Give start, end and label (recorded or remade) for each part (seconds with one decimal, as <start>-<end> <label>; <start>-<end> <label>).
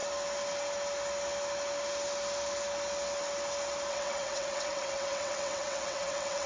0.0-3.9 recorded; 3.9-6.5 remade